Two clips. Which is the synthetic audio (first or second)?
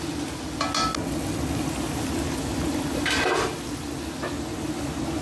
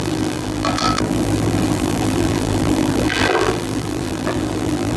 second